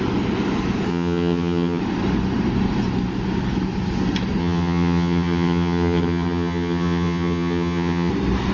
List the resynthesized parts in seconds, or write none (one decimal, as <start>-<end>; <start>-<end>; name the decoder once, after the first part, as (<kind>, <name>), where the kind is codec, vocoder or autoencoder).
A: 0.9-1.8 (vocoder, HiFi-GAN); 4.4-8.1